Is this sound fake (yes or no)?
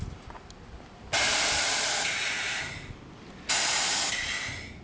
no